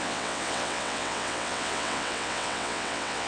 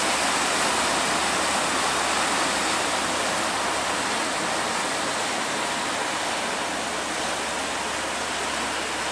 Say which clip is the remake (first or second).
first